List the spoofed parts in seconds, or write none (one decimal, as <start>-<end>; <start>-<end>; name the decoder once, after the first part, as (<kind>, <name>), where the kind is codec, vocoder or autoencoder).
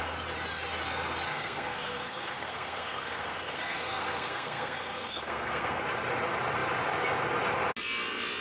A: 1.3-5.8 (codec, SNAC)